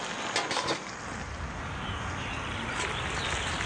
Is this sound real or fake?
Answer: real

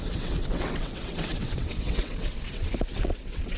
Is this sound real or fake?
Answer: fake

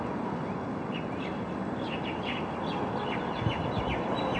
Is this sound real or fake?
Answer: real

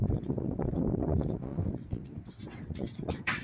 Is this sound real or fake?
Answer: fake